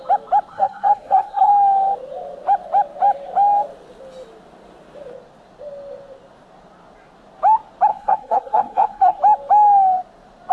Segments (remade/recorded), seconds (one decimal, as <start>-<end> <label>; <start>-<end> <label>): 0.0-0.5 recorded; 0.5-1.5 remade; 1.5-7.9 recorded; 7.9-9.2 remade; 9.2-10.5 recorded